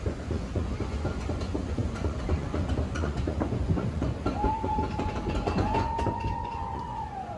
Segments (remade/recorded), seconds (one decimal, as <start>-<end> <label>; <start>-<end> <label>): 0.0-7.4 remade